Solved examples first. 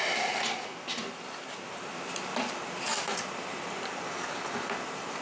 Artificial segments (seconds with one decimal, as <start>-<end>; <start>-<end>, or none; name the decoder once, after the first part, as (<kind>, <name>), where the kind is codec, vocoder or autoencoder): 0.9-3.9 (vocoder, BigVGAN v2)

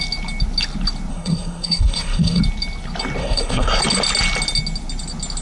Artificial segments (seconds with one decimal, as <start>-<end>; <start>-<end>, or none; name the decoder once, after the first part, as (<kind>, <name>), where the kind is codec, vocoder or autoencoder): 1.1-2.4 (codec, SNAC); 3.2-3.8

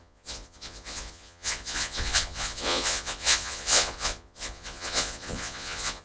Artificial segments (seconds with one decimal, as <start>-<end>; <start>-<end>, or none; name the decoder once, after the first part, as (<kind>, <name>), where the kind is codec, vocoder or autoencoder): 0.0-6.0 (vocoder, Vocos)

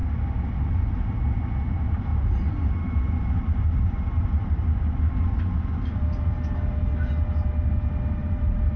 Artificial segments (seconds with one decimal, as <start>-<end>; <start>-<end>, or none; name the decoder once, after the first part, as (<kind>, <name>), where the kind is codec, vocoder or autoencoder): 2.1-5.7 (vocoder, BigVGAN v2); 8.2-8.8

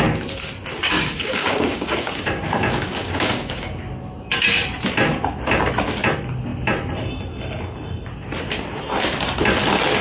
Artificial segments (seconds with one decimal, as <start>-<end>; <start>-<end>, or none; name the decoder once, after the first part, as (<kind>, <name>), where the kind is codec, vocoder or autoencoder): 0.7-3.8 (codec, DAC)

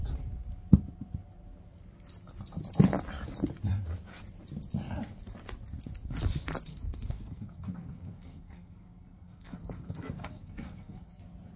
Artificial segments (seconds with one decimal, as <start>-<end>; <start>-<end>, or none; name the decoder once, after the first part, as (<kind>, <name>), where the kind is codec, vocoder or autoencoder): 6.7-11.2 (codec, SNAC)